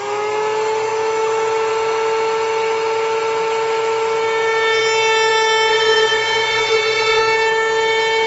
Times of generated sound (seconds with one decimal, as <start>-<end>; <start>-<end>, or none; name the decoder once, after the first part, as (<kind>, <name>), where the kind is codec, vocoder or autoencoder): 5.7-7.2 (vocoder, Vocos)